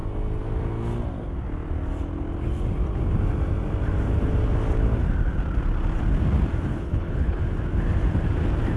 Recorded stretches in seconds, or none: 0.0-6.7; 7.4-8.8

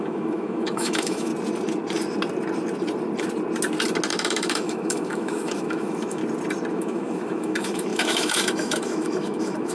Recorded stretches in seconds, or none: 1.3-4.1; 6.2-6.7

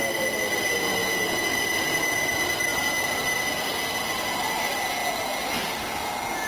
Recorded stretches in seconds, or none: 0.0-1.0; 1.5-6.5